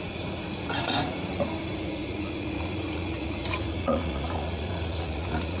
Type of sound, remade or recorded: remade